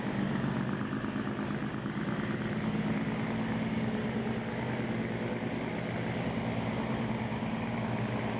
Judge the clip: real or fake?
real